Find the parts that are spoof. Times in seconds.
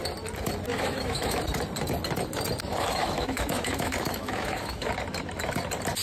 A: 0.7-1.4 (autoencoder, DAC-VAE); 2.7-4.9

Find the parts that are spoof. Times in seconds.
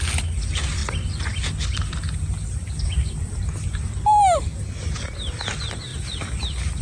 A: none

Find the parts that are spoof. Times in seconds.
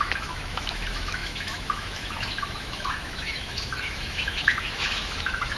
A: 0.0-5.6 (autoencoder, DAC-VAE)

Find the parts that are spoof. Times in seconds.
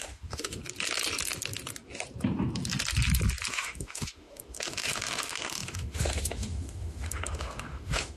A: 0.0-0.6 (autoencoder, DAC-VAE); 3.5-8.2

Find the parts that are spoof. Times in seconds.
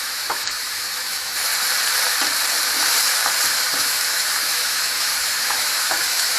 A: 0.0-1.5 (autoencoder, DAC-VAE); 3.8-6.4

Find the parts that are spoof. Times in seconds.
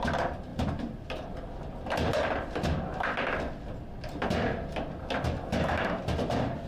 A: 5.5-6.0 (autoencoder, DAC-VAE)